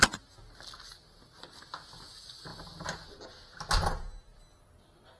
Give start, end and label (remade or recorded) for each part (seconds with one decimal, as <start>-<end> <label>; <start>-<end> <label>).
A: 0.0-5.2 recorded